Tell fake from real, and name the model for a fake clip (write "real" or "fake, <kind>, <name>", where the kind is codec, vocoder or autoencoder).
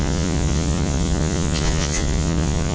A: fake, vocoder, Vocos